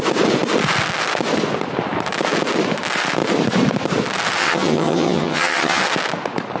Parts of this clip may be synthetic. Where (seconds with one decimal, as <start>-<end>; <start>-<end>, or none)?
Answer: 4.4-5.8